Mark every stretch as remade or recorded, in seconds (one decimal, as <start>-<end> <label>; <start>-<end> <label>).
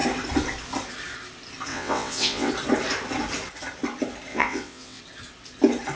0.0-1.7 recorded; 1.7-2.5 remade; 2.5-4.3 recorded; 4.3-5.0 remade; 5.0-6.0 recorded